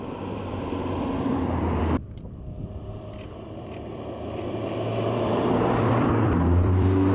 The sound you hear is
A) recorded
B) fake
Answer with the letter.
B